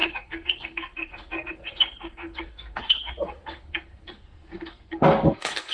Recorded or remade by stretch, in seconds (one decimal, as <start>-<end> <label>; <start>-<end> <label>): 0.0-5.7 remade